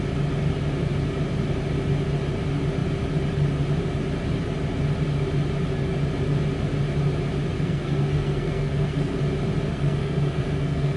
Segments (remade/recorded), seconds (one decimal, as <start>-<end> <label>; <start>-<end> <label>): 0.0-7.5 recorded; 7.5-9.2 remade; 9.2-9.7 recorded; 9.7-11.0 remade